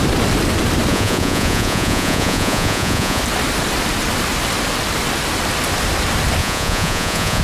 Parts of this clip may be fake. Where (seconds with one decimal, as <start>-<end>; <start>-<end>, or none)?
0.9-3.2; 6.4-7.4